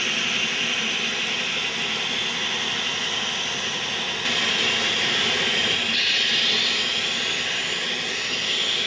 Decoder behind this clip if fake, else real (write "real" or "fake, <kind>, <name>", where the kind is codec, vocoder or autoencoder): real